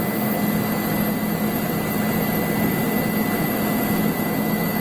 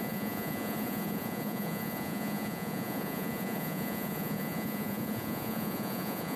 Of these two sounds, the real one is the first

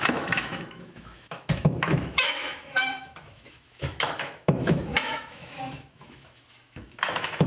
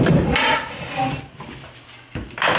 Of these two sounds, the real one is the second